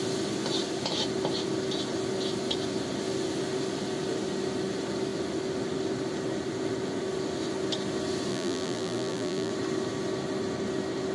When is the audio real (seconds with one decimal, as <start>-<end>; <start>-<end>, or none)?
0.0-8.3; 9.5-11.1